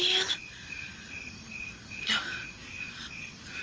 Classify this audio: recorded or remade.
recorded